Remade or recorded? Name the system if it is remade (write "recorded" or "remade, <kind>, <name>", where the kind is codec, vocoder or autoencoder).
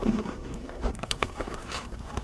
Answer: remade, codec, SNAC